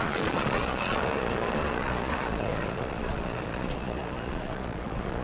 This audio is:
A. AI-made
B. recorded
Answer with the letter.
A